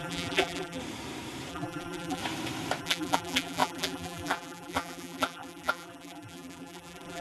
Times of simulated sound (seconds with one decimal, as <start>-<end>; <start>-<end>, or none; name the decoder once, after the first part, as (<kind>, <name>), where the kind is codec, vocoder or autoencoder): 0.0-0.8 (vocoder, BigVGAN v2); 1.5-2.2; 2.8-7.2